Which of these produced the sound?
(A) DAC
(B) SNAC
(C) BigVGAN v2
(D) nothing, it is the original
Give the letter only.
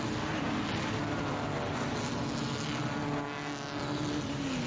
D